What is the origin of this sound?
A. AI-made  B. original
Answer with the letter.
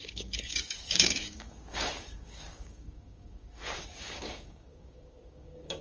A